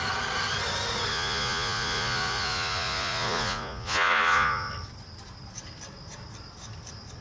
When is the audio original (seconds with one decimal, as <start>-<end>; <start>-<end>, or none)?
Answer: 0.0-1.1; 4.7-7.2